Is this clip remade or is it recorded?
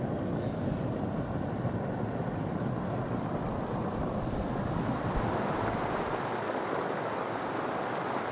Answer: recorded